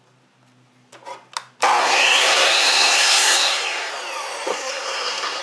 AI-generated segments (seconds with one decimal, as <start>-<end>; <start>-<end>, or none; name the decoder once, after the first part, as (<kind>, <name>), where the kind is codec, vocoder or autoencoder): 1.8-3.9 (codec, SNAC); 4.5-5.4

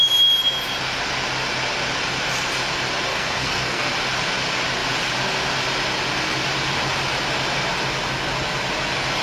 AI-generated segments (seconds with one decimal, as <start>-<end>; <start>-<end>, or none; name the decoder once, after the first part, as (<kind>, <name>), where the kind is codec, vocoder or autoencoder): 3.1-3.9 (codec, SNAC)

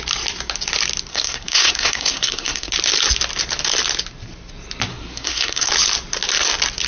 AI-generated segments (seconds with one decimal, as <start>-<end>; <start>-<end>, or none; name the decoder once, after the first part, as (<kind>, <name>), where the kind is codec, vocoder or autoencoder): 1.1-2.7 (codec, SNAC); 4.9-5.7

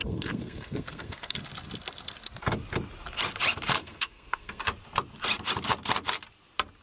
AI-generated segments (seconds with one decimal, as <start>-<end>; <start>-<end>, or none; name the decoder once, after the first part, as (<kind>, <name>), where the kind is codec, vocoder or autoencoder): 0.0-1.4 (codec, SNAC); 3.8-4.6

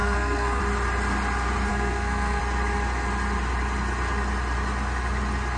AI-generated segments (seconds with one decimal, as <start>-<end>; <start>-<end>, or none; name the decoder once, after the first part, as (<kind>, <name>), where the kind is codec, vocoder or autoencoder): 0.0-0.6 (codec, SNAC); 1.7-2.4

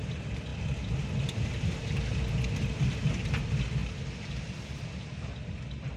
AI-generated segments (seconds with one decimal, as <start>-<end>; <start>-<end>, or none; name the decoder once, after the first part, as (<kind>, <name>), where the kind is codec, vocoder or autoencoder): none

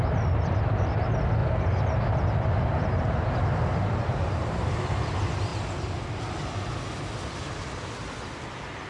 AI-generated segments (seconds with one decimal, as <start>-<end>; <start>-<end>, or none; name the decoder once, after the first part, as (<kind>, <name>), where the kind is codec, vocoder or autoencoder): none

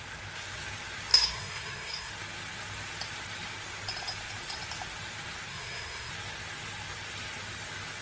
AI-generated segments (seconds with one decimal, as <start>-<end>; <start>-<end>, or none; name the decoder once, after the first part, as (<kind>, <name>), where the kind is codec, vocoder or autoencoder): 1.1-2.1 (codec, SNAC); 5.5-6.1